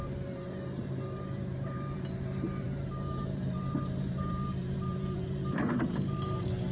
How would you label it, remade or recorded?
remade